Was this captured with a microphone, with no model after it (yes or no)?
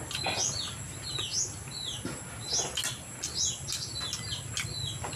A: yes